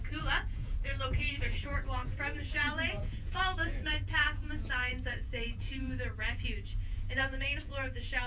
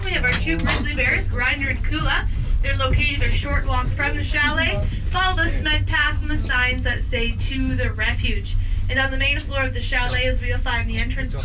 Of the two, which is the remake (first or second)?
first